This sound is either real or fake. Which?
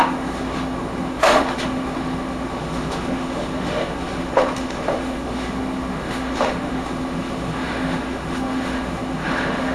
fake